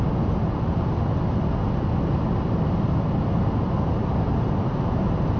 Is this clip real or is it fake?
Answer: real